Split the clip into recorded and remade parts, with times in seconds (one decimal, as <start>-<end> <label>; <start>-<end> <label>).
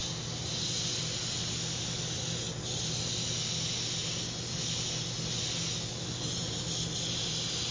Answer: 0.0-7.7 recorded